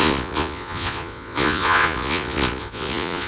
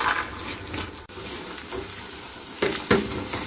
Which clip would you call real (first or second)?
second